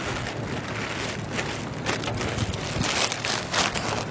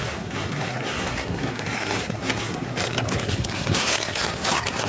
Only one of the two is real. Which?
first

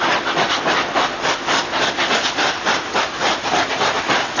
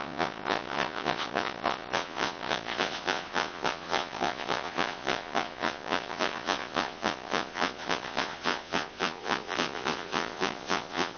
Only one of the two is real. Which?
first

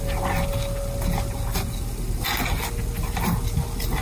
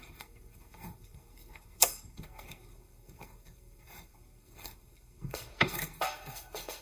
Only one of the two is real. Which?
first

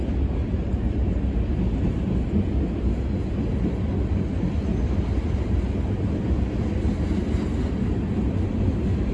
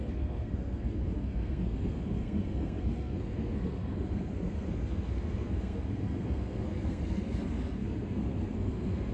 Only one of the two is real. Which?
first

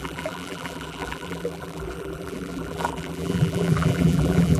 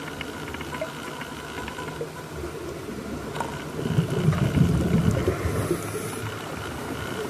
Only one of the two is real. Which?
second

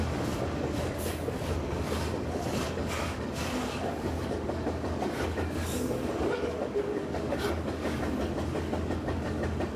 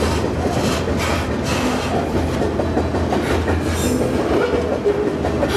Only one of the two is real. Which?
second